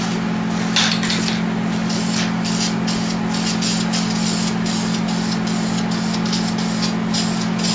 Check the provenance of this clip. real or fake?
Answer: real